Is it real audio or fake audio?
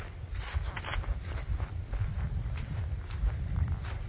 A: real